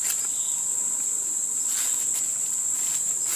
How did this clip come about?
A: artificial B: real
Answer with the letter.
B